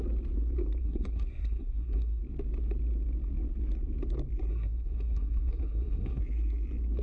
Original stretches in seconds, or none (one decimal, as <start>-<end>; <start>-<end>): 0.0-0.8; 2.2-4.5; 6.2-7.0